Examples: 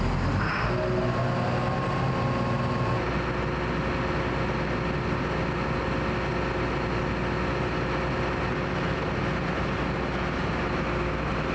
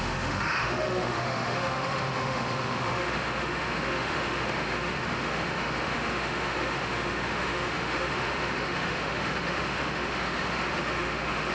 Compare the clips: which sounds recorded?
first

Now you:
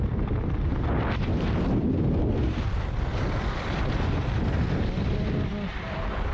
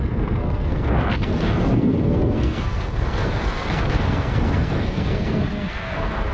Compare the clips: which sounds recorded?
first